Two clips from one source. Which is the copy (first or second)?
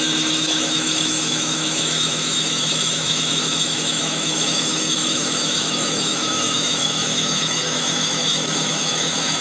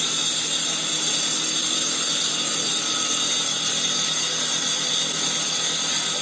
first